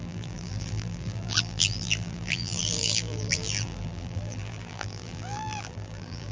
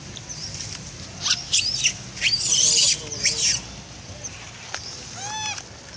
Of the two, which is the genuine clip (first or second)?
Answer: second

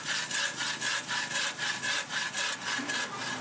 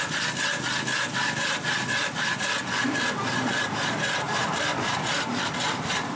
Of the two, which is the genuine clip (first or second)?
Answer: first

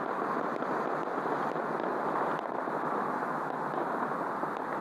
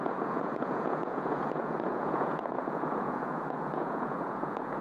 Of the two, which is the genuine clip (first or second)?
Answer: first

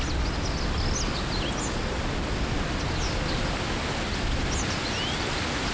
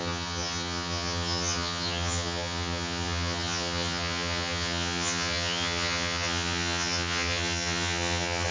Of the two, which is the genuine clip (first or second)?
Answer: first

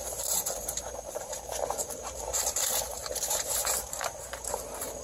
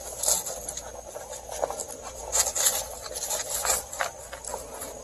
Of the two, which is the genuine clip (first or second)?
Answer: second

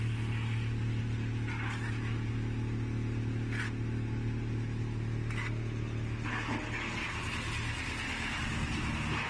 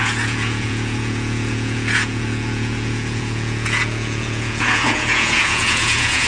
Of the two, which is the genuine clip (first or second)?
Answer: first